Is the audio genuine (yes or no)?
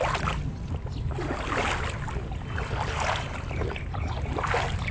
yes